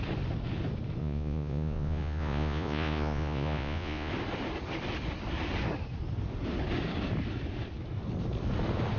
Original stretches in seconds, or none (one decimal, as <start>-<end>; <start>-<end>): 0.0-1.0; 4.1-9.0